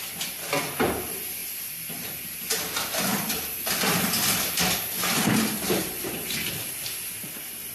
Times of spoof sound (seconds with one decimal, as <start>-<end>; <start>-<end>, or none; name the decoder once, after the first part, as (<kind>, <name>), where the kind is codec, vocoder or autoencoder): 1.4-2.1 (vocoder, BigVGAN v2)